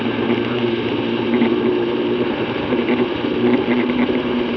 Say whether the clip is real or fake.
fake